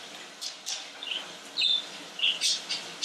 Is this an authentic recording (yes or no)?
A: yes